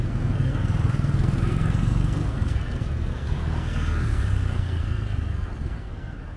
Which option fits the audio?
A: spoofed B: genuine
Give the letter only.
A